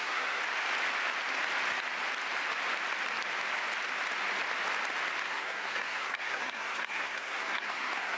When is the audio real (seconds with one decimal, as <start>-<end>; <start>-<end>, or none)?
0.4-5.2